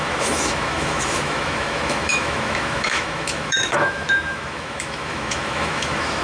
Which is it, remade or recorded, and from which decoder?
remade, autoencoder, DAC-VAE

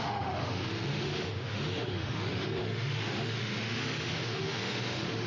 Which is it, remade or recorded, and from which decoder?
remade, autoencoder, DAC-VAE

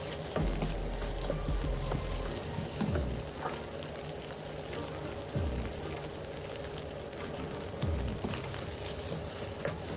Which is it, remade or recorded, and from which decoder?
recorded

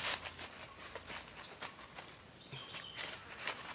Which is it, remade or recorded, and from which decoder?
recorded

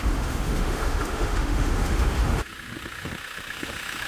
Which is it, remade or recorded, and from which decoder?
remade, autoencoder, DAC-VAE